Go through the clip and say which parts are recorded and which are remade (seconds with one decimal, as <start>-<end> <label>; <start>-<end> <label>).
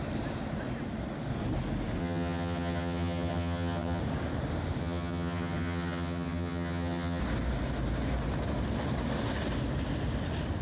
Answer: 0.0-2.0 recorded; 2.0-4.0 remade; 4.0-4.8 recorded; 4.8-7.2 remade; 7.2-10.6 recorded